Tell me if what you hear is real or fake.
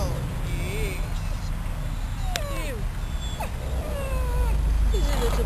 real